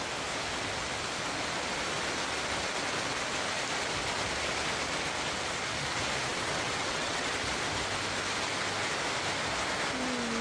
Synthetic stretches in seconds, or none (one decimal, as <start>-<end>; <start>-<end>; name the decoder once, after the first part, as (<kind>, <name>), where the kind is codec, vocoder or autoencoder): 6.3-7.3 (vocoder, WaveNeXt)